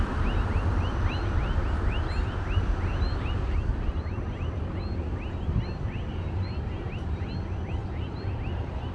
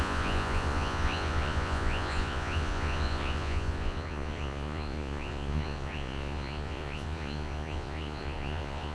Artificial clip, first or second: second